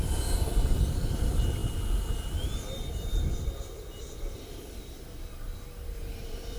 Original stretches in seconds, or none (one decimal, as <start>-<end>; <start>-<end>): 0.0-6.6